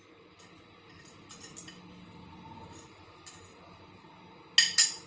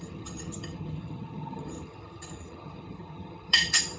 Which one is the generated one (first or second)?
second